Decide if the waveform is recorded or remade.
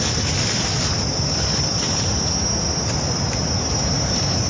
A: recorded